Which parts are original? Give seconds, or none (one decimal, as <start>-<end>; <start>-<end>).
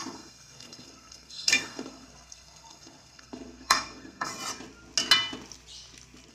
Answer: 4.3-6.3